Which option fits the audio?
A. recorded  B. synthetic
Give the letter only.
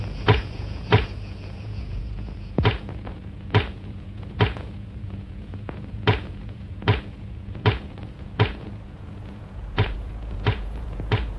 B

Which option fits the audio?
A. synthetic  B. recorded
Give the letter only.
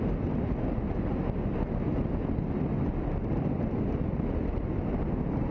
B